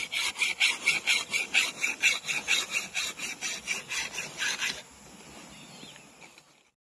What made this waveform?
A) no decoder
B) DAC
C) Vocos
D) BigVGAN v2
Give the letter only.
A